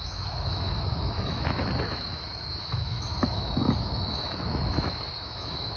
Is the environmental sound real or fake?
fake